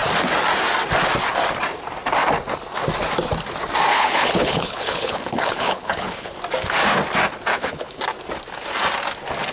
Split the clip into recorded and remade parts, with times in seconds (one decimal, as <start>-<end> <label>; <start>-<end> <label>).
0.0-3.9 recorded; 3.9-6.3 remade; 6.3-7.5 recorded; 7.5-8.0 remade; 8.0-9.5 recorded